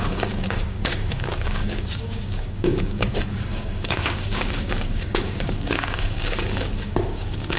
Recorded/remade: remade